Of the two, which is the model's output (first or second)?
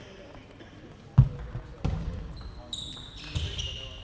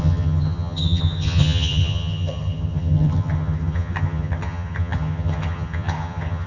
second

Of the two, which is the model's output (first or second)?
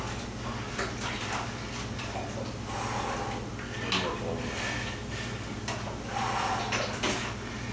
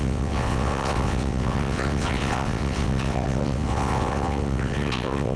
second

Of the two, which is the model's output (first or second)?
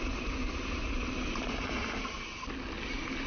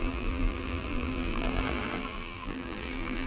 second